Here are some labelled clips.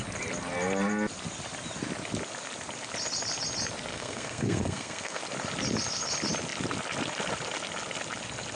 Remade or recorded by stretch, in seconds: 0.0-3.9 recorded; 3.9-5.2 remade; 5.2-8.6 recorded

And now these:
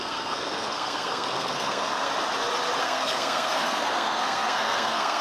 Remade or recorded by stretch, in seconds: 0.0-2.1 remade; 2.1-2.8 recorded; 2.8-5.2 remade

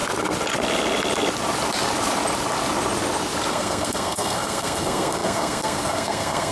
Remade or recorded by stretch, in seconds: 0.0-3.5 recorded; 3.5-6.5 remade

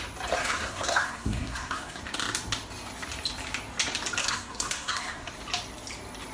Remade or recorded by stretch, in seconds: 0.0-0.4 recorded; 0.4-2.0 remade; 2.0-4.2 recorded; 4.2-5.3 remade; 5.3-6.3 recorded